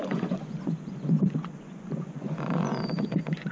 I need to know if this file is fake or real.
fake